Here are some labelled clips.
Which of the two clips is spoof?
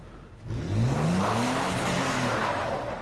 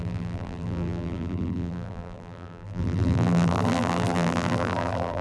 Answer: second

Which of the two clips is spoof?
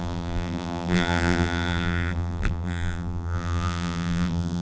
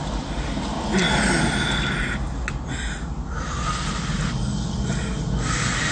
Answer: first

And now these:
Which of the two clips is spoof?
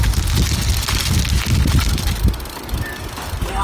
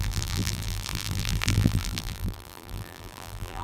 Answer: second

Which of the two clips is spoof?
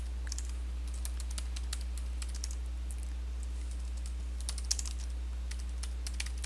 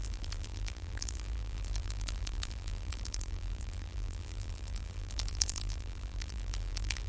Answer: second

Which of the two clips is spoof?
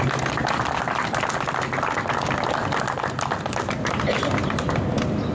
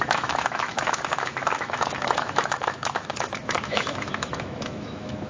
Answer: second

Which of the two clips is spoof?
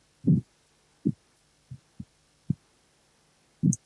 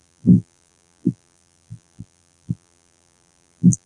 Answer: second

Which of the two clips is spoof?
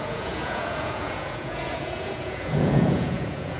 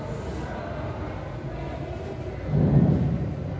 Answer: first